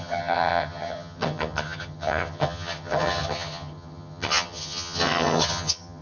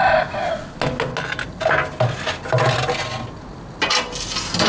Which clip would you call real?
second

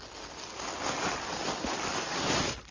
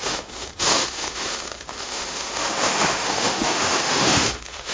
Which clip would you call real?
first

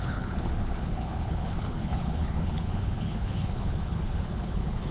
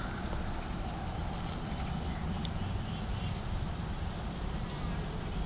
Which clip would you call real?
second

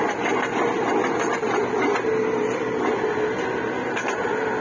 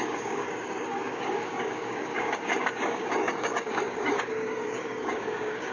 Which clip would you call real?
first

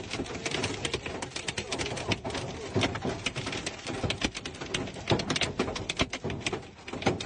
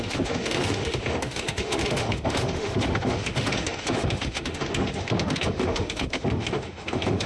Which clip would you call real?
first